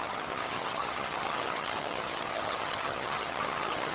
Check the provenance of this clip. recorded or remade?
remade